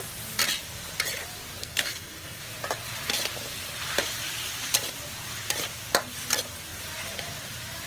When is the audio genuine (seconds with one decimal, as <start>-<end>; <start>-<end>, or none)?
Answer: 0.0-1.6; 2.4-7.9

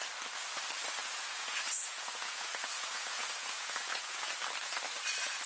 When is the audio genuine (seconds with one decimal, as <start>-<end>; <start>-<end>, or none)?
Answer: 0.0-1.0; 4.3-5.5

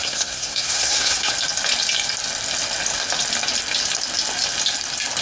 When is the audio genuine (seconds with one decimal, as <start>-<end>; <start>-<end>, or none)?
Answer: 1.3-5.2